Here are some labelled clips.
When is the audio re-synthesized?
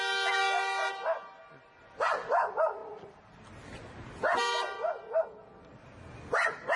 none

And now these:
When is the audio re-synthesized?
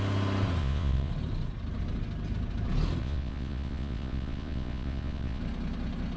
0.6-1.1 (vocoder, Vocos); 3.0-5.4